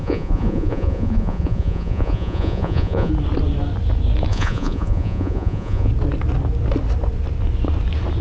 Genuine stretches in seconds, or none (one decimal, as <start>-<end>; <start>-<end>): 3.1-4.3; 5.9-8.2